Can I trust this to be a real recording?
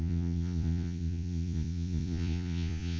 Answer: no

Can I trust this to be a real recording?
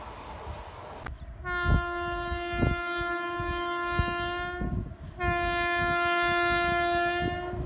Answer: yes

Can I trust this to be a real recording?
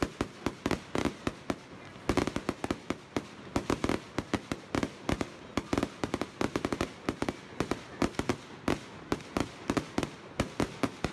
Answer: yes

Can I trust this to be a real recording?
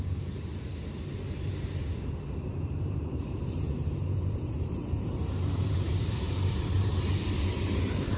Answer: no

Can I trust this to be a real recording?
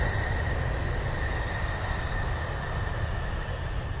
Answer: yes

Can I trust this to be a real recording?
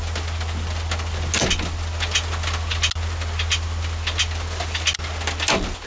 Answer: yes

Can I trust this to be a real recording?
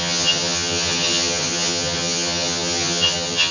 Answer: no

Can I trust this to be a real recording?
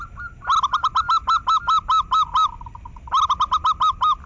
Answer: yes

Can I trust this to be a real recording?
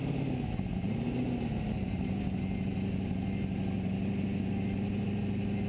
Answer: yes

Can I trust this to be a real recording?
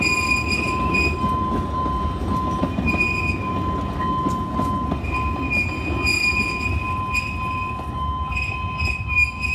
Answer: yes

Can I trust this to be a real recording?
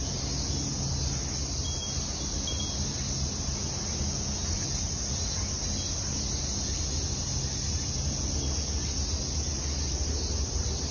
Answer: yes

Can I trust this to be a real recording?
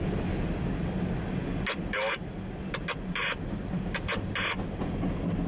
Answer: yes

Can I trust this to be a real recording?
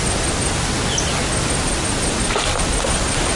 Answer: yes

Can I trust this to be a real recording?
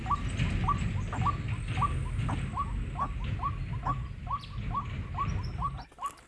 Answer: yes